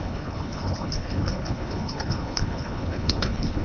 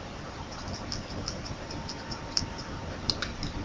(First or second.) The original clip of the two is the second